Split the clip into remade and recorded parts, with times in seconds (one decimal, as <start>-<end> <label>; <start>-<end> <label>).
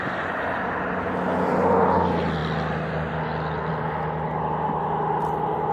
0.0-5.7 recorded